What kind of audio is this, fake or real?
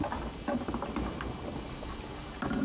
real